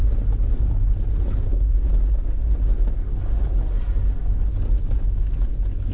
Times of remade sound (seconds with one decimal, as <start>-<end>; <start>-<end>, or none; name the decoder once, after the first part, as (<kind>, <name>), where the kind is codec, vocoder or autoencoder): none